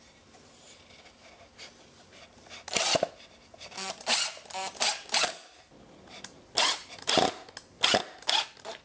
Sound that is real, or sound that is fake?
real